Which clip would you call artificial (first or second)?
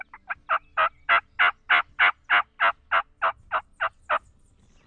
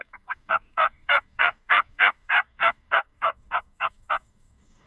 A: second